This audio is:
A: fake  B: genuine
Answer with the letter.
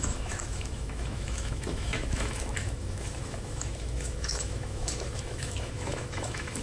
A